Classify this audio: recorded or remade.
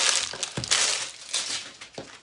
recorded